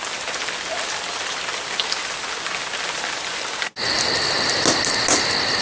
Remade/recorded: recorded